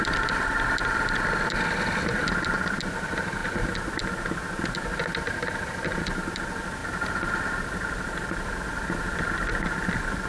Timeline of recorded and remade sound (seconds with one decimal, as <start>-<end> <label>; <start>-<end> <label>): 0.0-10.3 recorded